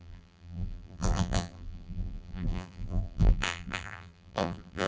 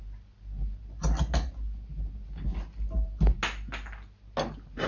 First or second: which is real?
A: second